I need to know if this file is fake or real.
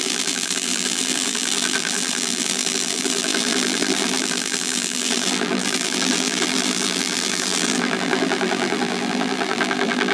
fake